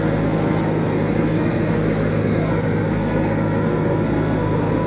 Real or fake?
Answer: fake